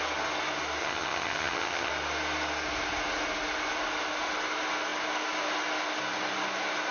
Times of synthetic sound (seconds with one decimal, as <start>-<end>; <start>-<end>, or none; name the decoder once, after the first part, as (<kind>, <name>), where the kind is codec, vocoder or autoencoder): 0.8-1.9 (vocoder, HiFi-GAN)